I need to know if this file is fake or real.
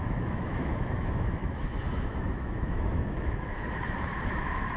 fake